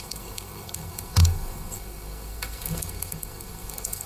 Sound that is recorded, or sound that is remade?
remade